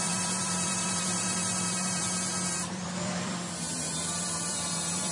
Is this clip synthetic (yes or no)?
yes